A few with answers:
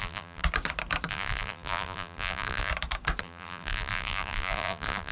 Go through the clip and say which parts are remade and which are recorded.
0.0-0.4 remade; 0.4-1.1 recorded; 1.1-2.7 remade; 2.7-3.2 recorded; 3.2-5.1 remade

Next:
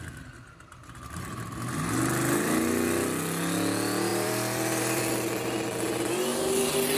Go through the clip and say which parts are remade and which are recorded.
0.0-4.1 recorded; 4.1-5.0 remade; 5.0-7.0 recorded

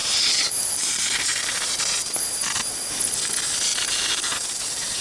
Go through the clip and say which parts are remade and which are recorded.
0.0-1.8 remade; 1.8-3.7 recorded; 3.7-5.0 remade

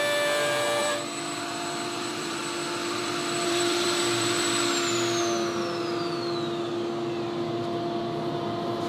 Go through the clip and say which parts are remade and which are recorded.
0.0-0.8 recorded; 0.8-2.4 remade; 2.4-2.8 recorded; 2.8-4.5 remade; 4.5-8.9 recorded

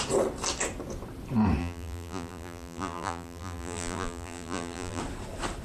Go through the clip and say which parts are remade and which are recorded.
0.0-1.6 recorded; 1.6-5.0 remade; 5.0-5.6 recorded

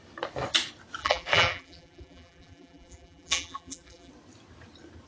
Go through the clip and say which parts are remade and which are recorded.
0.0-1.0 recorded; 1.0-4.1 remade; 4.1-5.1 recorded